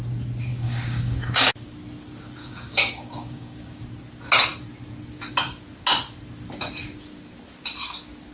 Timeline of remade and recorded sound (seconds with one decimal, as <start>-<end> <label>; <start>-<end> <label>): 0.0-0.5 recorded; 0.5-1.5 remade; 1.5-2.4 recorded; 2.4-3.8 remade; 3.8-8.3 recorded